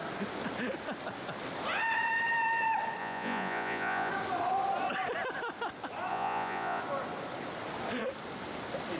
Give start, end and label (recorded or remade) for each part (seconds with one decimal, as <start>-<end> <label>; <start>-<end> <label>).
0.0-3.0 recorded; 3.0-4.1 remade; 4.1-6.1 recorded; 6.1-6.8 remade; 6.8-9.0 recorded